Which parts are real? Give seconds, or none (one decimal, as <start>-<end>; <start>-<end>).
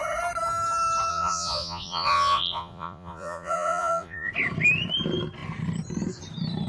0.0-1.1; 4.3-6.7